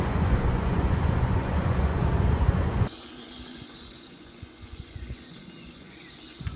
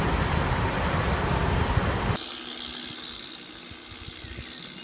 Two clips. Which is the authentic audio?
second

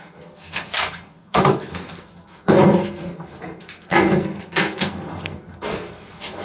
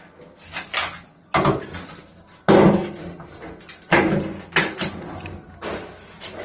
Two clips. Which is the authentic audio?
second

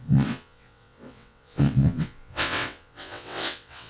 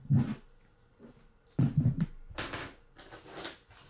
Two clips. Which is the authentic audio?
second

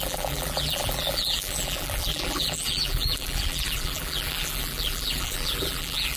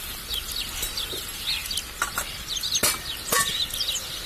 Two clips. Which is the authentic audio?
second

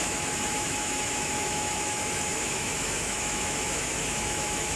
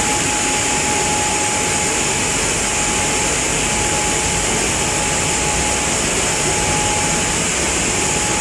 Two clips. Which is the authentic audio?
second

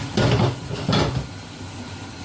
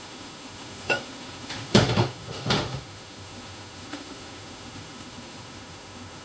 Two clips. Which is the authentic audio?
first